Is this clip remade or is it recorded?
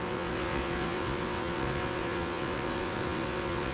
remade